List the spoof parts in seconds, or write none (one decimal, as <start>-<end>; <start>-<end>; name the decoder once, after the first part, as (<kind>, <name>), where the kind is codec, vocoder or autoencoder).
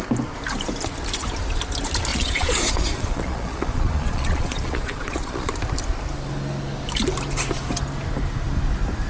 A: 2.1-5.5 (vocoder, Vocos)